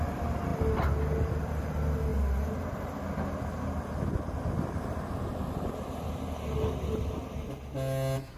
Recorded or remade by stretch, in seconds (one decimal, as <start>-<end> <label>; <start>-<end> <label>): 0.0-8.4 recorded